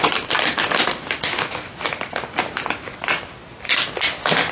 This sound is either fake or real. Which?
real